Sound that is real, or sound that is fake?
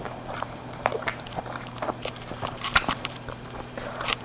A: fake